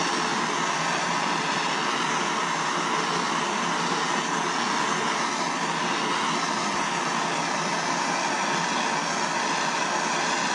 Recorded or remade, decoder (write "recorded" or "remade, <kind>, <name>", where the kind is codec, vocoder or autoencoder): recorded